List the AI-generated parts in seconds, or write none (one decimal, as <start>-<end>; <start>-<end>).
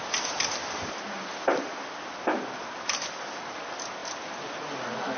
none